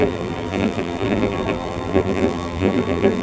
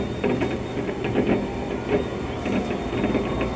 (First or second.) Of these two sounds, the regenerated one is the first